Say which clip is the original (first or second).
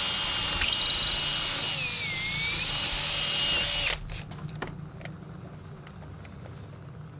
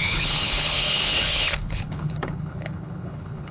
first